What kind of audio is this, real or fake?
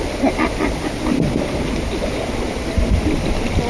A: real